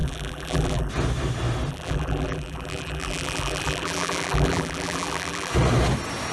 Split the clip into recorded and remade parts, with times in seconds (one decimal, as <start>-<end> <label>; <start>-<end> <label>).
0.0-0.9 remade; 0.9-1.7 recorded; 1.7-5.5 remade; 5.5-6.3 recorded

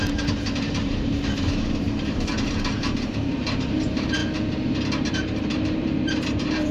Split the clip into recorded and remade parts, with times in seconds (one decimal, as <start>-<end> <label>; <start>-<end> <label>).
0.0-4.2 remade; 4.2-5.1 recorded; 5.1-6.7 remade

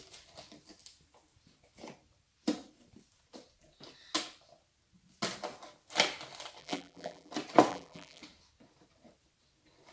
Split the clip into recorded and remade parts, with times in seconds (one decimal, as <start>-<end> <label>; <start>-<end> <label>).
0.0-6.6 recorded; 6.6-7.3 remade; 7.3-7.7 recorded; 7.7-8.2 remade; 8.2-9.9 recorded